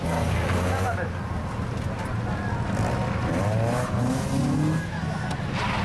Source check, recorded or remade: recorded